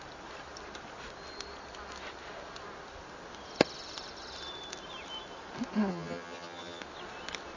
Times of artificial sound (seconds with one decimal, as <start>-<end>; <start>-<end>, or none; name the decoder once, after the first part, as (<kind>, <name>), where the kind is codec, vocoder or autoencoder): 5.9-6.8 (vocoder, HiFi-GAN)